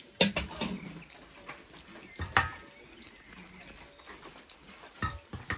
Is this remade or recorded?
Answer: recorded